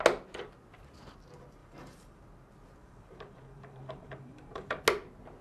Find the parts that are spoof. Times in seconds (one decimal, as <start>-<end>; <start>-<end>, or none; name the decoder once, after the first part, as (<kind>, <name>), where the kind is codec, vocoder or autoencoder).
1.6-2.2 (vocoder, BigVGAN v2); 2.8-4.8